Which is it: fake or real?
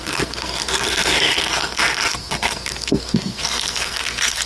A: fake